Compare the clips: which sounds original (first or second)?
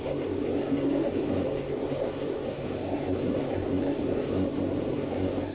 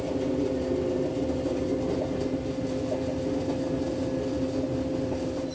second